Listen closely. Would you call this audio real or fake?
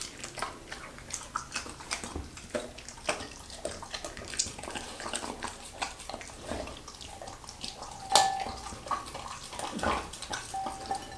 real